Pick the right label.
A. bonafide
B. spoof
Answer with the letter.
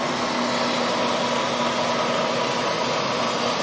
A